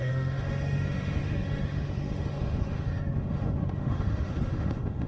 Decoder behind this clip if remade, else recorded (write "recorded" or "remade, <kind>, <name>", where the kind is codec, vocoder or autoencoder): remade, autoencoder, DAC-VAE